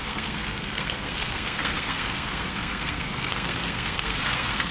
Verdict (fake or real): fake